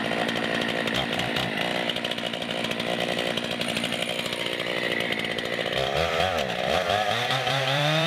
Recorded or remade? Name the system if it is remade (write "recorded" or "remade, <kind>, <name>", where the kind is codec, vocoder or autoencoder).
remade, vocoder, BigVGAN v2